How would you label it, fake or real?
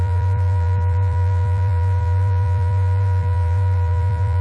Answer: fake